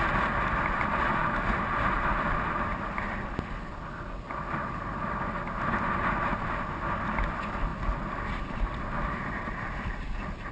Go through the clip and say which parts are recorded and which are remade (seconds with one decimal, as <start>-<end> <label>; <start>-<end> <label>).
0.0-10.5 recorded